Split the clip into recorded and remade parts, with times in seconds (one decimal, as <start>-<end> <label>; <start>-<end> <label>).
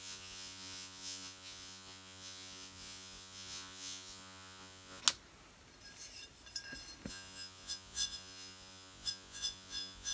0.0-5.0 remade; 5.0-7.1 recorded; 7.1-10.1 remade